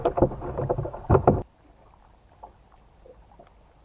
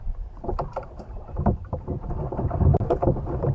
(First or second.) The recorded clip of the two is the first